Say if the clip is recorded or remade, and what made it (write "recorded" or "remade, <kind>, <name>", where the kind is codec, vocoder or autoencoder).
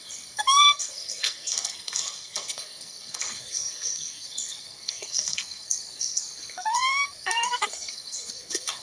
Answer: remade, codec, SNAC